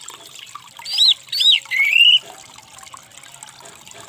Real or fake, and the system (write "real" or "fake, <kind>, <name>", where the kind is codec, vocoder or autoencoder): real